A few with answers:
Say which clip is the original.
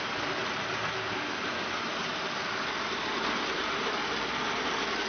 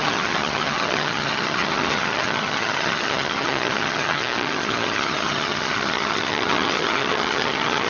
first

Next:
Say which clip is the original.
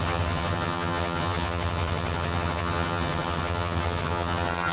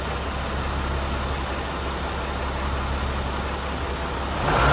second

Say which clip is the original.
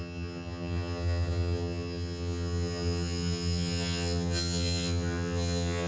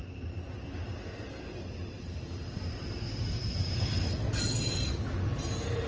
second